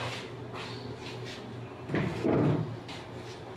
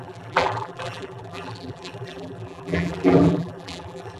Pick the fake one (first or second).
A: second